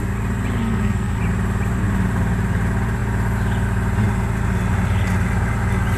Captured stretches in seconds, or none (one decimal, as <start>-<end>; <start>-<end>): 0.0-0.6; 1.2-6.0